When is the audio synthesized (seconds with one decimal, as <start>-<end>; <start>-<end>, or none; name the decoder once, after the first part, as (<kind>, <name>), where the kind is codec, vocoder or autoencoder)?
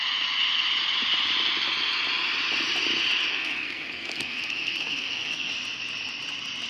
3.3-5.5 (codec, SNAC)